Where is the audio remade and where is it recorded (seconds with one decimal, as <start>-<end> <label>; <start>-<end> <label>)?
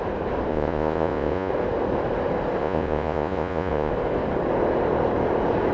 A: 0.0-0.5 recorded; 0.5-1.5 remade; 1.5-2.6 recorded; 2.6-3.9 remade; 3.9-5.7 recorded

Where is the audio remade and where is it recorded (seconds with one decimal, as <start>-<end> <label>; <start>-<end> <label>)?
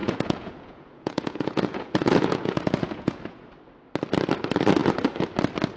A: 0.0-3.5 remade; 3.5-5.8 recorded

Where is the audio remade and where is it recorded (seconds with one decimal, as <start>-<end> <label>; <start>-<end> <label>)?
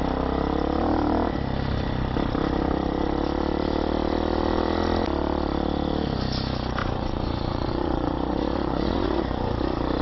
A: 0.0-6.8 recorded; 6.8-9.5 remade; 9.5-10.0 recorded